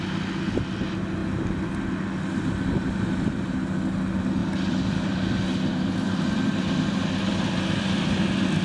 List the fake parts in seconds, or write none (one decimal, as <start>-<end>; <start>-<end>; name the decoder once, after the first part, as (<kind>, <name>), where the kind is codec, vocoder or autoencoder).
1.2-1.9 (vocoder, BigVGAN v2); 4.4-8.2